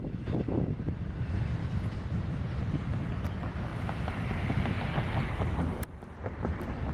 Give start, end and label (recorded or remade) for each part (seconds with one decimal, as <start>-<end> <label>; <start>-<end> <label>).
0.0-6.9 recorded

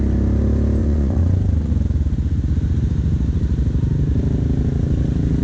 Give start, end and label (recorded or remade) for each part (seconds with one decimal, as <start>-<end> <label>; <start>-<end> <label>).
0.0-0.8 recorded; 0.8-1.7 remade; 1.7-5.4 recorded

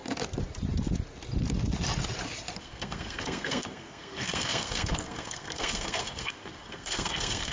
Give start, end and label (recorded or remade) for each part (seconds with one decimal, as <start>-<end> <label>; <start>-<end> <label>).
0.0-2.6 recorded; 2.6-7.5 remade